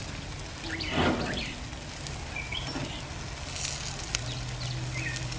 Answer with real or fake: real